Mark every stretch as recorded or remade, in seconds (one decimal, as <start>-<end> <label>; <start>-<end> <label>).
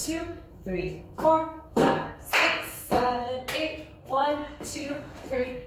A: 0.0-3.4 remade; 3.4-4.0 recorded; 4.0-5.7 remade